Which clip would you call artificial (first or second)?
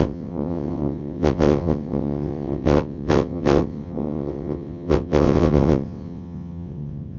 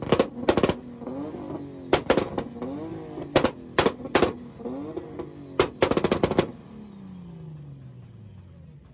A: first